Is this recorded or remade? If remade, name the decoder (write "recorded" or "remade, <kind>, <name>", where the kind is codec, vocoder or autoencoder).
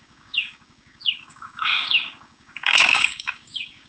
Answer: remade, codec, DAC